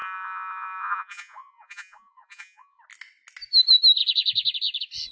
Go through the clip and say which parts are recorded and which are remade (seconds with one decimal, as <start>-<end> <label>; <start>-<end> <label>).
0.0-2.8 remade; 2.8-5.1 recorded